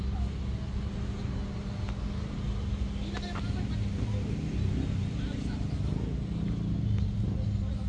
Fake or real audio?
real